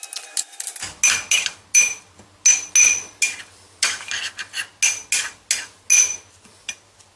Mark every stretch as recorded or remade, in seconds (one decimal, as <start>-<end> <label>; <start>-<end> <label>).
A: 0.0-7.2 recorded